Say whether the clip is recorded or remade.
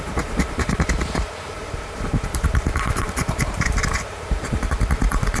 remade